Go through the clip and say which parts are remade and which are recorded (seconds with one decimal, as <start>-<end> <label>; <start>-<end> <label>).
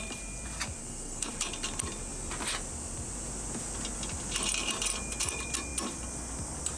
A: 0.0-0.8 recorded; 0.8-1.3 remade; 1.3-6.8 recorded